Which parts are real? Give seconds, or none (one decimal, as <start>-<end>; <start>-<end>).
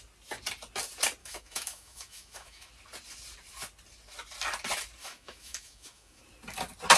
0.0-1.2; 2.7-5.0; 6.2-7.0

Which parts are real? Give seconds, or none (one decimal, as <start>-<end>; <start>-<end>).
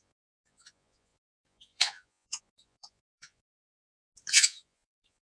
3.6-4.3